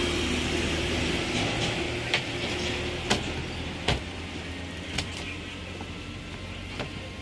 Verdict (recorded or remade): recorded